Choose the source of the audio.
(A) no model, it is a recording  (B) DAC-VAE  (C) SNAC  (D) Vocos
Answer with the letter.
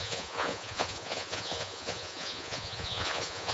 D